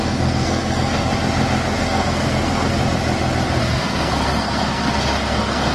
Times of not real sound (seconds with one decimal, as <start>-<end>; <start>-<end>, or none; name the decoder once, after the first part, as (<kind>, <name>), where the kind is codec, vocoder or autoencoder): 0.0-1.1 (codec, SNAC); 1.8-2.8; 3.6-5.7